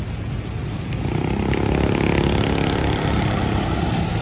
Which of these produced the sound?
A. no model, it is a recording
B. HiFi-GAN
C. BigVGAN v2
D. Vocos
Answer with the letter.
A